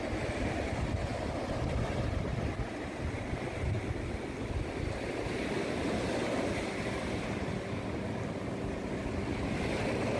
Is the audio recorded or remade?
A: recorded